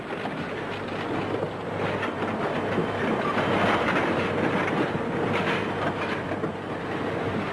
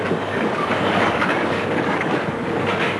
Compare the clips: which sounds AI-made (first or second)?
second